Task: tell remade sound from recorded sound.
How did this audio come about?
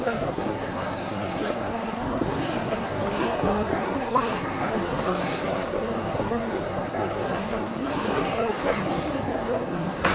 remade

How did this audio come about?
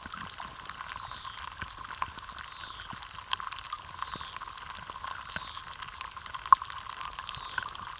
recorded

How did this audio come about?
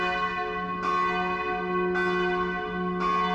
recorded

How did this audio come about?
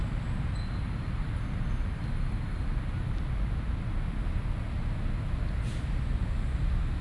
recorded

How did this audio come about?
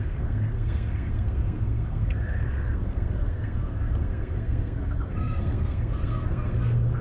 remade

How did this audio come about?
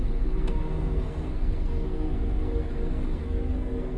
remade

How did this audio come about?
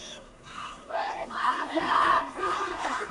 remade